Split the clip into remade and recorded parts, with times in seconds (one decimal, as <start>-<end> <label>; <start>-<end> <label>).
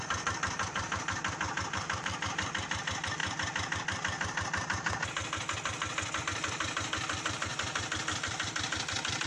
0.0-3.2 remade; 3.2-6.2 recorded; 6.2-7.5 remade; 7.5-8.2 recorded; 8.2-9.3 remade